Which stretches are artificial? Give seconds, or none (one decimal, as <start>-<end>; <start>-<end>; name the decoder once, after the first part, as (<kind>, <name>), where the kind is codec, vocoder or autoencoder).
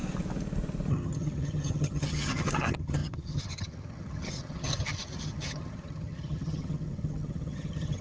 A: 0.9-8.0 (vocoder, HiFi-GAN)